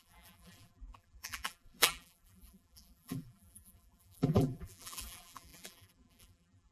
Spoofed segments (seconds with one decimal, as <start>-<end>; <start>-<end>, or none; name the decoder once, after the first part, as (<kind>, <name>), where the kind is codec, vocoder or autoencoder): 0.0-6.7 (vocoder, BigVGAN v2)